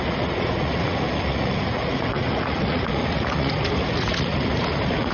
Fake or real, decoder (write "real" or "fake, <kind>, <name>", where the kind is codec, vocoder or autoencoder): fake, vocoder, Vocos